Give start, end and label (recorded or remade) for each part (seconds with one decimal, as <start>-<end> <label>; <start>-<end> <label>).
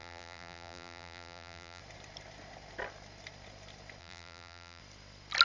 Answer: 0.0-1.8 remade; 1.8-4.0 recorded; 4.0-4.8 remade; 4.8-5.4 recorded